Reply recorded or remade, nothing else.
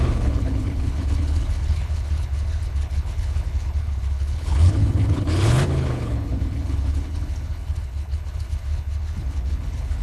remade